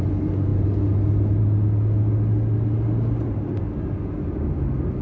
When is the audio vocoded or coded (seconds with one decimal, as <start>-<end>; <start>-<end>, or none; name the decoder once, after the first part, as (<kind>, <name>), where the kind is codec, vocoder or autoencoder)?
none

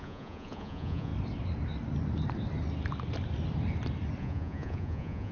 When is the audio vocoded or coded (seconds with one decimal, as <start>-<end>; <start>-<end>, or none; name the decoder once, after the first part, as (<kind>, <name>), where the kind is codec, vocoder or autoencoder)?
0.0-1.1 (vocoder, Vocos); 4.2-5.3

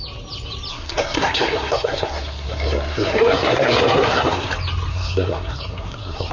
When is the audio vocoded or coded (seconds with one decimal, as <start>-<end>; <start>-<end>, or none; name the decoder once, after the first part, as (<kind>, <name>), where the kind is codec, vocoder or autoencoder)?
0.7-4.5 (codec, SNAC); 4.9-6.3

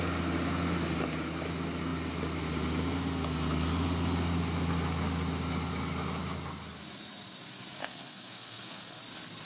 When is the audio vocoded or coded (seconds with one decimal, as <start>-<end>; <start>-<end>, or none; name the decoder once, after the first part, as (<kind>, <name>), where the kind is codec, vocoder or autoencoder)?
7.8-9.0 (codec, SNAC)

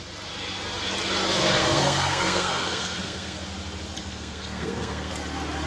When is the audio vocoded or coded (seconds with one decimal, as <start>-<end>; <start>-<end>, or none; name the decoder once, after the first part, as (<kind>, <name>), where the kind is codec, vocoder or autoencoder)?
1.6-3.4 (codec, SNAC); 4.0-5.1

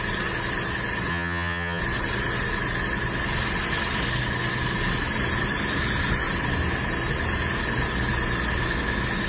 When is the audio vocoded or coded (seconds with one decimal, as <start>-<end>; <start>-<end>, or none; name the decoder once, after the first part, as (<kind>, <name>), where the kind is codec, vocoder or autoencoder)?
1.1-1.8 (vocoder, HiFi-GAN)